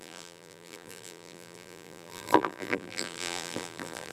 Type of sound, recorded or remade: remade